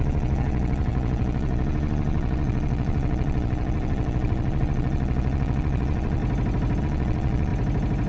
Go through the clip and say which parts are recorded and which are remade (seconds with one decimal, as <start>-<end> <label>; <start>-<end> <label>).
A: 0.0-6.2 remade; 6.2-6.8 recorded; 6.8-7.5 remade; 7.5-8.1 recorded